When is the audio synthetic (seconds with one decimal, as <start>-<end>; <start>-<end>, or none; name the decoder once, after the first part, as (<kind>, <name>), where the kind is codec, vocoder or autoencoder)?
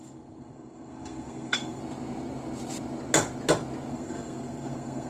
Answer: 0.0-1.8 (codec, SNAC); 3.9-5.1